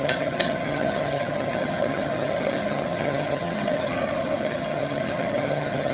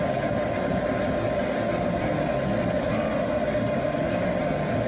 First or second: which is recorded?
second